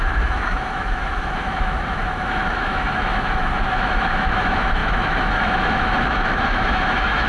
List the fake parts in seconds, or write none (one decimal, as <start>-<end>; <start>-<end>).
0.0-7.3